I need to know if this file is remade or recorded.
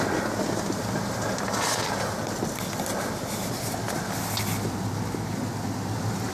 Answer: recorded